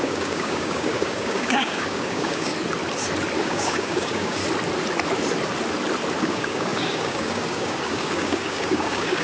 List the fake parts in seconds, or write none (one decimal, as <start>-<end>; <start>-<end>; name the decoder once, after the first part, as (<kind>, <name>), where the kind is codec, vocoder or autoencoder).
0.0-2.5 (codec, DAC); 3.4-4.4; 6.2-9.2